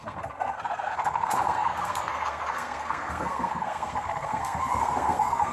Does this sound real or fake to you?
fake